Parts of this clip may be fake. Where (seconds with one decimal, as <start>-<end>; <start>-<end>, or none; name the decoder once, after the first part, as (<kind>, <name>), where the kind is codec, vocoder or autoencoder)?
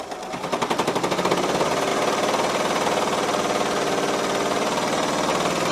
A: none